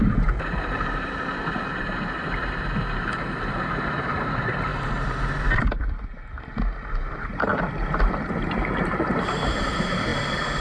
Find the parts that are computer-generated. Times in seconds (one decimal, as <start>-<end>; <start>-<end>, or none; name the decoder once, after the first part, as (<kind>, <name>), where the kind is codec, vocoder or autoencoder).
0.0-4.7 (vocoder, BigVGAN v2); 5.4-7.5; 8.9-10.6